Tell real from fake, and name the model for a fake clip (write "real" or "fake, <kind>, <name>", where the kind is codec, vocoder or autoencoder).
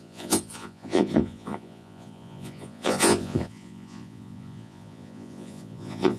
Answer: fake, vocoder, Vocos